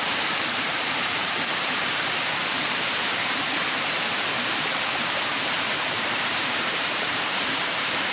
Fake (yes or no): yes